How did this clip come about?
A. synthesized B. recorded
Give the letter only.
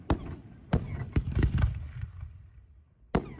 B